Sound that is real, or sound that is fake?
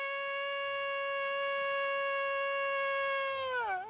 real